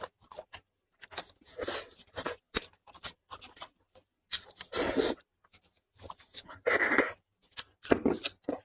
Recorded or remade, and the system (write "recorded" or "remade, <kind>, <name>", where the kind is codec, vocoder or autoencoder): recorded